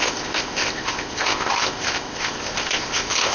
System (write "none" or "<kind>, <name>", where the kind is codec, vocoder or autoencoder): codec, ZipCodec